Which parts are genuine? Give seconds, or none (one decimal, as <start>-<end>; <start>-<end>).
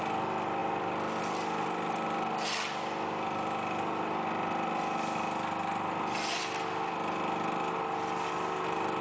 0.0-9.0